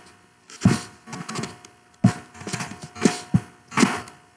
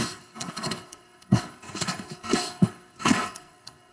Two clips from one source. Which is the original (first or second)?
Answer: first